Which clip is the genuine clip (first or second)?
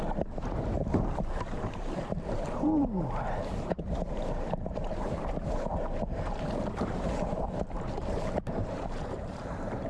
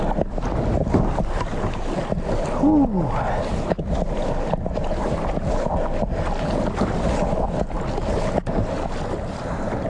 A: second